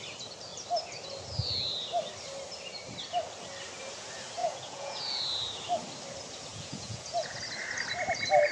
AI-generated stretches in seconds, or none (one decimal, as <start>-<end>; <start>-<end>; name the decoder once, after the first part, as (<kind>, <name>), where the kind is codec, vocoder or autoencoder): 4.4-5.0 (vocoder, Vocos); 6.5-7.4